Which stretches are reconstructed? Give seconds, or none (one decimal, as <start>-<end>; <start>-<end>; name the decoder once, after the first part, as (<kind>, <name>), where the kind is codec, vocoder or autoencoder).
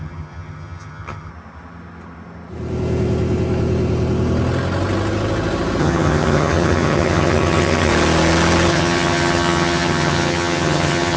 0.0-1.3 (vocoder, HiFi-GAN); 5.8-7.9; 8.7-11.2